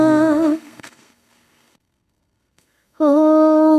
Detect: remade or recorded remade